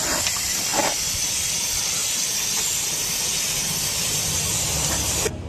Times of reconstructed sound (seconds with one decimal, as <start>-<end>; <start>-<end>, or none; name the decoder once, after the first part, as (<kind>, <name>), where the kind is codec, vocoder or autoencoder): none

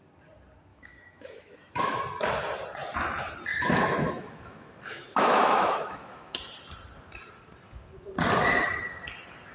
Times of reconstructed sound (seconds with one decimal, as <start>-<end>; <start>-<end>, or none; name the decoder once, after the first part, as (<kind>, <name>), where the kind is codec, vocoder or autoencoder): 0.7-2.0 (autoencoder, DAC-VAE); 3.5-6.4